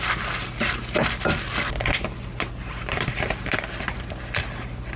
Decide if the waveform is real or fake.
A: real